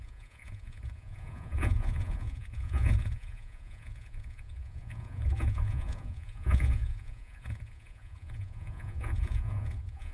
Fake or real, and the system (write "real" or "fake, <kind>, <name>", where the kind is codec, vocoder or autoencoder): fake, vocoder, Vocos